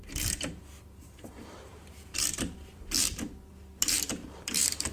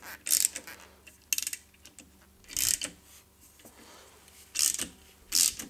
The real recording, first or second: second